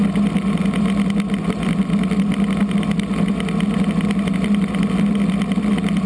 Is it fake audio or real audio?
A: real